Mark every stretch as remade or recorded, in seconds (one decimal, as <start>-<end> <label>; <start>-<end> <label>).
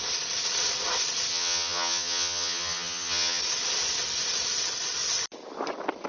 0.0-1.3 recorded; 1.3-3.4 remade; 3.4-6.1 recorded